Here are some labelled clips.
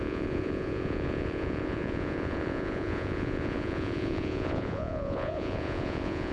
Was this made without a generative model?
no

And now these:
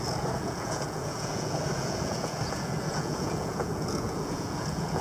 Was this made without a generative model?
no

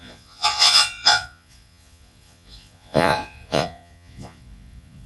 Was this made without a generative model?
no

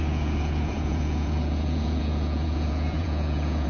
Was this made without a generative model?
no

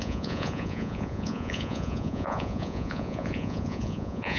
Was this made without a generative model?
no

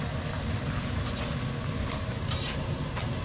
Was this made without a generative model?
yes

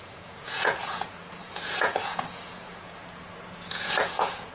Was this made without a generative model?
no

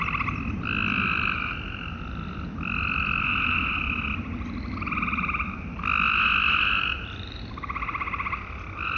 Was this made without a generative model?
yes